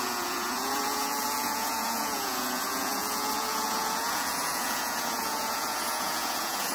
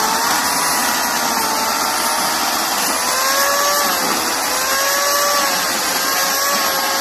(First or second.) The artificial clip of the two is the first